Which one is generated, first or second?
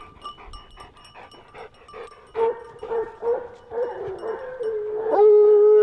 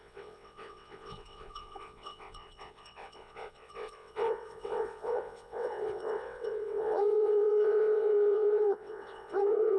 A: second